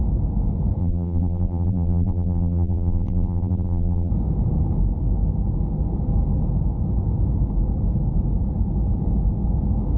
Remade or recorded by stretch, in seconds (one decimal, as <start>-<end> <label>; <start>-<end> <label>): 0.0-0.8 recorded; 0.8-4.1 remade; 4.1-10.0 recorded